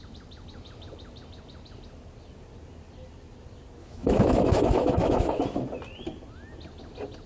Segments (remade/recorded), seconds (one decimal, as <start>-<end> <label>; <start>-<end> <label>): 0.0-3.8 recorded; 3.8-5.4 remade; 5.4-7.3 recorded